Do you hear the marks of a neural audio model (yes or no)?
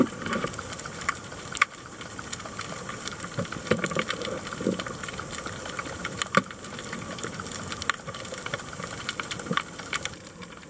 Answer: no